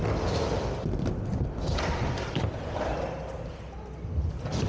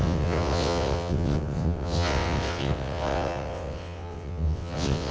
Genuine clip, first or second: first